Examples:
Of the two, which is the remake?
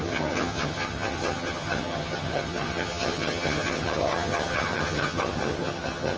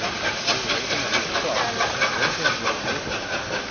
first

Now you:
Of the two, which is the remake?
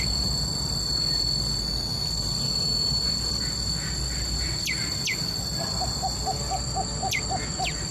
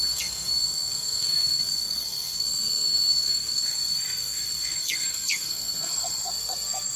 second